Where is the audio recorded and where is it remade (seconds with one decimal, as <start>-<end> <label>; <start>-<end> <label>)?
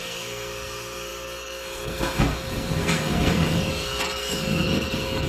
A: 0.0-5.3 remade